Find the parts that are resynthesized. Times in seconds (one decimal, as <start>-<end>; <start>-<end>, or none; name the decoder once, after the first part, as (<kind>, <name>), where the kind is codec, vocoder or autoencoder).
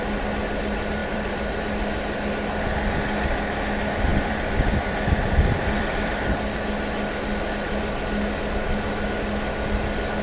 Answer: 1.0-1.6 (vocoder, BigVGAN v2); 4.1-6.2